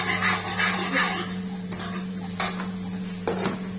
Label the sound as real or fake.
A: real